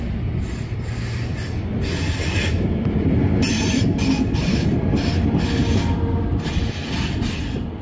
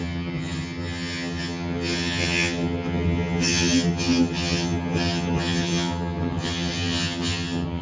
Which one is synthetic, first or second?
second